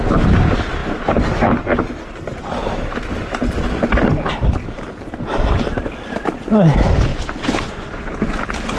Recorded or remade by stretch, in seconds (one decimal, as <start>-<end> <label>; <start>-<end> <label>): 0.0-7.1 recorded; 7.1-8.1 remade; 8.1-8.8 recorded